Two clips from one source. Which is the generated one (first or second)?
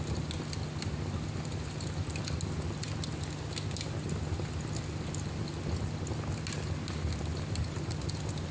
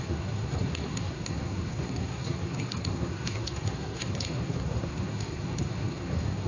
second